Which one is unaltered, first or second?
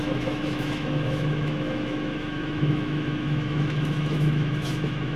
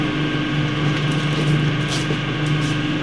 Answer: second